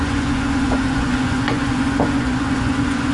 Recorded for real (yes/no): no